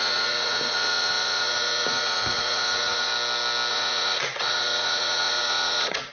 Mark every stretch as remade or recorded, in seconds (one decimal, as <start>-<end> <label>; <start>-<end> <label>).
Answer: 0.0-3.1 remade; 3.1-3.7 recorded; 3.7-6.1 remade

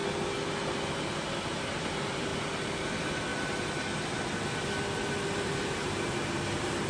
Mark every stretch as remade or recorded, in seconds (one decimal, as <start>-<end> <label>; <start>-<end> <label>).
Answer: 0.0-1.5 recorded; 1.5-3.3 remade; 3.3-5.1 recorded; 5.1-6.9 remade

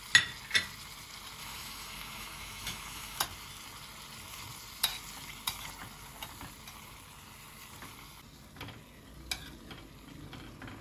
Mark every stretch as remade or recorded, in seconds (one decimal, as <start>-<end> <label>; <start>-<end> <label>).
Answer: 0.0-1.4 recorded; 1.4-3.2 remade; 3.2-10.8 recorded